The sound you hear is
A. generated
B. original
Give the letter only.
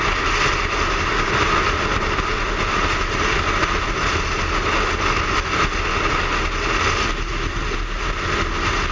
B